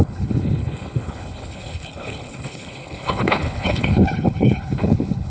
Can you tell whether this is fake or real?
fake